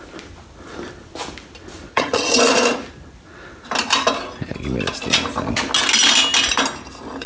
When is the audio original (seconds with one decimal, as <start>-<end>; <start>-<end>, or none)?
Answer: 0.0-1.9; 2.4-7.3